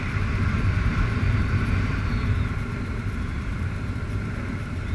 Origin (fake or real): fake